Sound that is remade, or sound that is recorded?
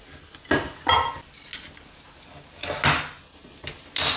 recorded